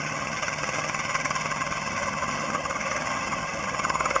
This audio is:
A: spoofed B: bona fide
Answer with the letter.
A